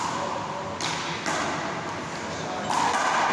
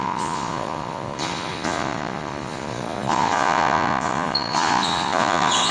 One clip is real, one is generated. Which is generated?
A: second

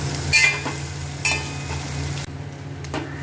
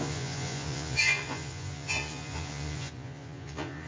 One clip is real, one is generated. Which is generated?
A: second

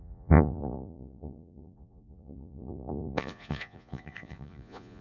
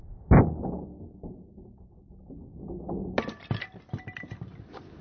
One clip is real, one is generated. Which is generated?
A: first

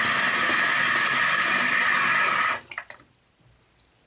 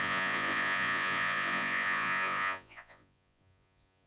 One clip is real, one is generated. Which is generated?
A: second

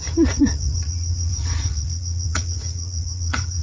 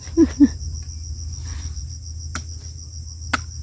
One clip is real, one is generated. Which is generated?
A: first